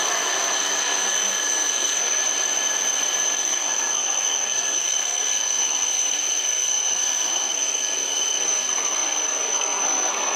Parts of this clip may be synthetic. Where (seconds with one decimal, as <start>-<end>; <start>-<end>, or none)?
0.0-2.2; 3.3-10.4